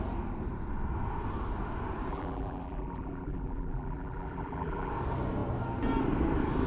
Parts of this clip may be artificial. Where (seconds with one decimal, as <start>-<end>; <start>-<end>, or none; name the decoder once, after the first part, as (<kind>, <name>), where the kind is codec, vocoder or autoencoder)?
2.1-4.9 (vocoder, BigVGAN v2)